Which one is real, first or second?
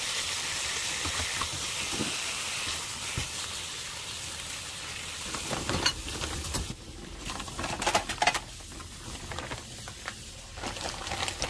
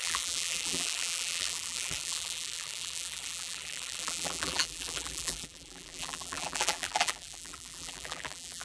first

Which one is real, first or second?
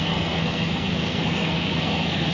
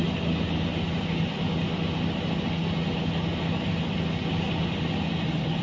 second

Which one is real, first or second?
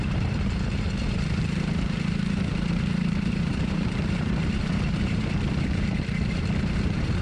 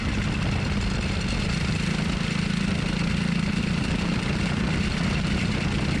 second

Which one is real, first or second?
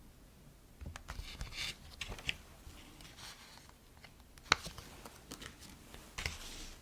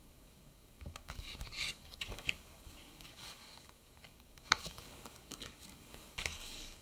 first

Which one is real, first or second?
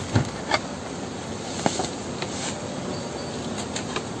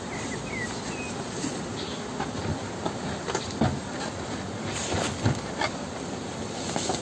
second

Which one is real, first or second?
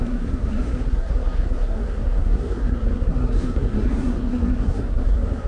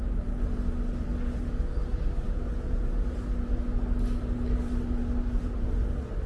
second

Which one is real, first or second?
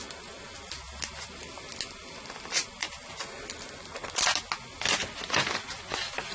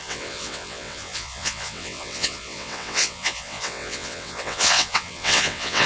first